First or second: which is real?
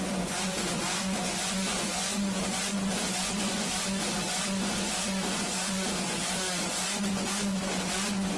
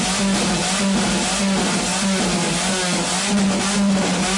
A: second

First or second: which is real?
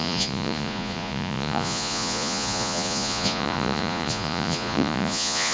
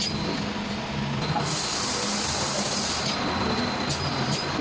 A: second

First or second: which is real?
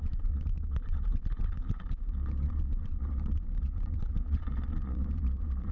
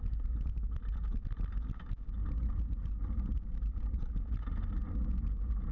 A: second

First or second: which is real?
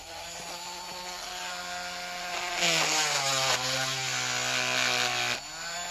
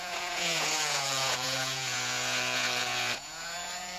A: first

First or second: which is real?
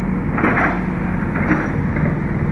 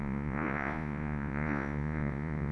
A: first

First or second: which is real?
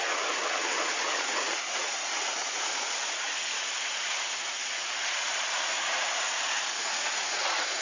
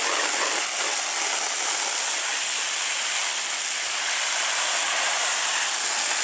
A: second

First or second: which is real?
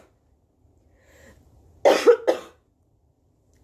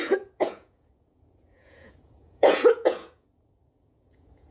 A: first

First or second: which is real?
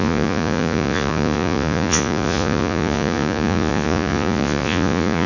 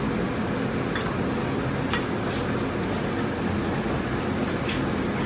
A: second